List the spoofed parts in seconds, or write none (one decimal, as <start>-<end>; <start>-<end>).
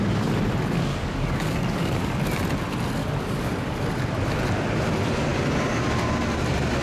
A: 0.9-2.2; 3.0-3.8